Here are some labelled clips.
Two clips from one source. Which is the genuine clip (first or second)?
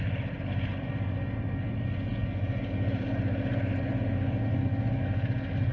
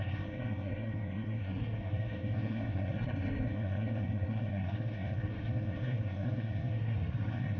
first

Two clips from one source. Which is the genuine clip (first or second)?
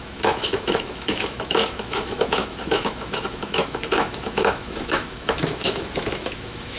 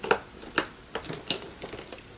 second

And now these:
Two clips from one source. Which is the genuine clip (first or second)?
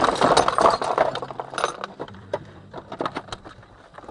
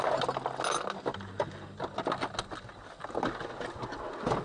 second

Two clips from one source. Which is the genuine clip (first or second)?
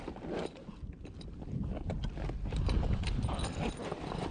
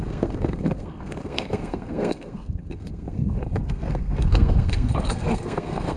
first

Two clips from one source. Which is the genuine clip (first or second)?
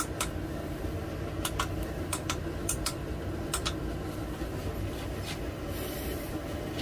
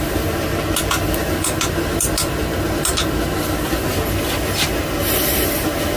second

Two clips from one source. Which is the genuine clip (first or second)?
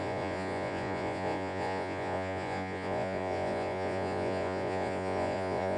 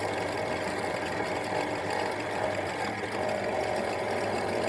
second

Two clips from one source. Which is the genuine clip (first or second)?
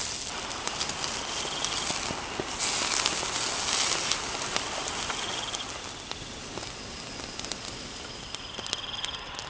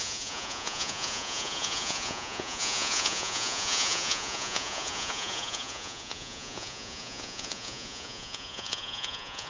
first